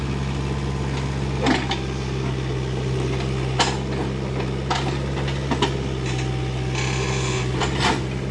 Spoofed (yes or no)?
no